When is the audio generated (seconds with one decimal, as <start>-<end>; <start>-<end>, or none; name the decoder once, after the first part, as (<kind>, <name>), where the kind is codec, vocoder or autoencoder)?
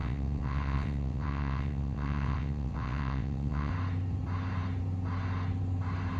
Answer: 0.0-3.7 (vocoder, WaveNeXt)